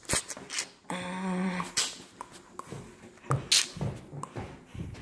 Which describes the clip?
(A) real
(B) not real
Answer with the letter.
A